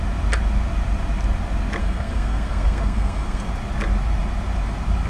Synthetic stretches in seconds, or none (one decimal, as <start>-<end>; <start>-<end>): 1.8-3.5